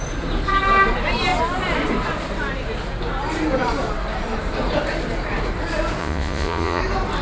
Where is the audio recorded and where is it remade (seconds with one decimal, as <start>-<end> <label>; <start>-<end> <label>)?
0.0-6.0 recorded; 6.0-6.8 remade; 6.8-7.2 recorded